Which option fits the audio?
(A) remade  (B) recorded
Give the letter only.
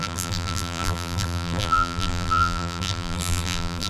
A